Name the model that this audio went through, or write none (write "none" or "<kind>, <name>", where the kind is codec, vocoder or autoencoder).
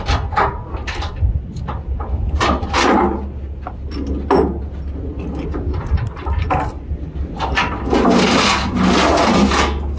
none